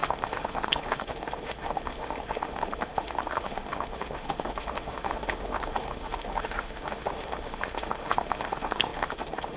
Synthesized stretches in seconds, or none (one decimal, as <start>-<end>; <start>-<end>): 0.0-9.6